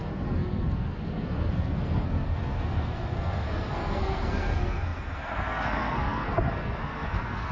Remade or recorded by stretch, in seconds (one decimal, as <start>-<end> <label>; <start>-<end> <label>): 0.0-7.5 remade